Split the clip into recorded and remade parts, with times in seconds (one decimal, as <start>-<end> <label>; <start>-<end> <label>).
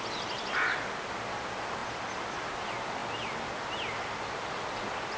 0.0-5.2 recorded